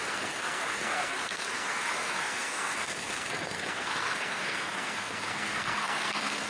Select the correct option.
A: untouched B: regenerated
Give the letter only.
B